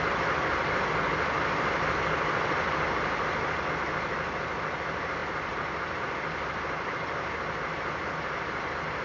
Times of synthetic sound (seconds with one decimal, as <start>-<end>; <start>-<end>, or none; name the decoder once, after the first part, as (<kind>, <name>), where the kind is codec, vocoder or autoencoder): none